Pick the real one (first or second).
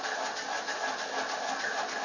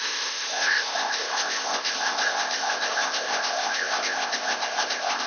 first